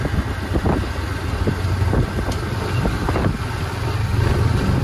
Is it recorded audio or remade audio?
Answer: recorded